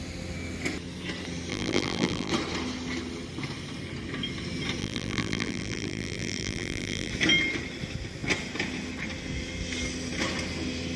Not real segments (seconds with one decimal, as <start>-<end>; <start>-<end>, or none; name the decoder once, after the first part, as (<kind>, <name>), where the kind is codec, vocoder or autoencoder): 1.5-2.3 (vocoder, BigVGAN v2); 4.8-7.1